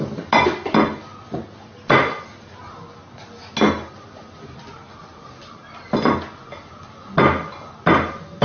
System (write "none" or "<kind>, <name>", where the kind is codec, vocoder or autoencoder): none